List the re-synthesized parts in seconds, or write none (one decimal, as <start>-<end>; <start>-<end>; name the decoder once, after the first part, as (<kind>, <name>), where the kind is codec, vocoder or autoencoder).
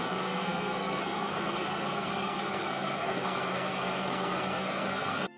0.0-5.4 (codec, SNAC)